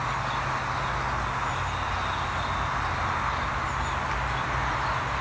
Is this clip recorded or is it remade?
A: recorded